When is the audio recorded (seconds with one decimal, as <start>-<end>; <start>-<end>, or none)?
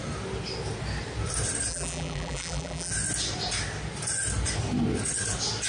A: 0.0-1.7; 2.9-5.7